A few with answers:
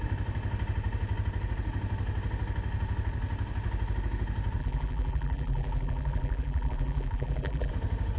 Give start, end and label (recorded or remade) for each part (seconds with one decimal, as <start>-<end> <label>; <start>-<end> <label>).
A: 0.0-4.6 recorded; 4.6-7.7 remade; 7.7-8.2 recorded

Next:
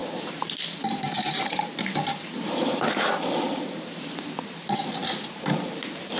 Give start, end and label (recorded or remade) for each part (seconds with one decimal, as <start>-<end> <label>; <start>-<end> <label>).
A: 0.0-5.0 remade; 5.0-6.2 recorded

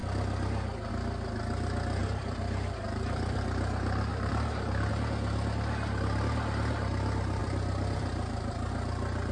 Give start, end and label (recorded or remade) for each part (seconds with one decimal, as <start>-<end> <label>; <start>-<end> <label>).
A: 0.0-2.0 recorded; 2.0-3.4 remade; 3.4-4.1 recorded; 4.1-4.9 remade; 4.9-7.4 recorded; 7.4-8.7 remade; 8.7-9.3 recorded